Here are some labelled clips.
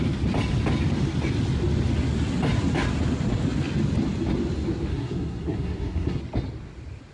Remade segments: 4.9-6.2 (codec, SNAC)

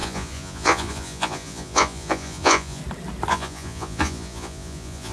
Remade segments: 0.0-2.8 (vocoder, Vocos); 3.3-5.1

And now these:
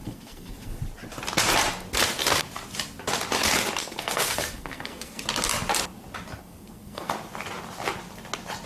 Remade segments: 0.0-0.8 (codec, SNAC); 3.8-5.2; 6.4-7.1

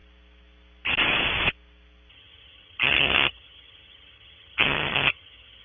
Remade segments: 2.1-5.6 (vocoder, HiFi-GAN)

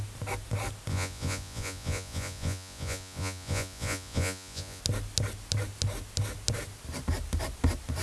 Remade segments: 0.9-4.8 (vocoder, Vocos)

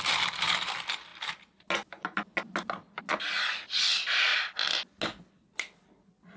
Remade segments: none